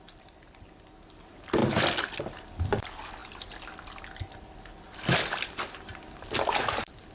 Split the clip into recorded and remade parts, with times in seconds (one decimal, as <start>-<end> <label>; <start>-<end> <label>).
0.0-7.1 recorded